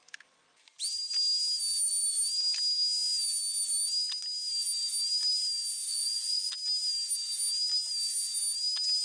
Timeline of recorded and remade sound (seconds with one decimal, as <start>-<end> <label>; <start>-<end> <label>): 0.0-5.9 recorded; 5.9-6.5 remade; 6.5-9.0 recorded

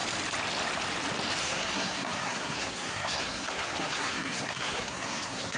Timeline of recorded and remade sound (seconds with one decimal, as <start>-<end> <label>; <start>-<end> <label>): 0.0-1.4 recorded; 1.4-5.6 remade

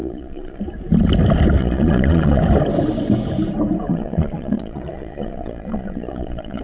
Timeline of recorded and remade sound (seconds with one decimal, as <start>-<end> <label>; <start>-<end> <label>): 0.0-0.6 remade; 0.6-1.6 recorded; 1.6-2.4 remade; 2.4-3.9 recorded; 3.9-6.6 remade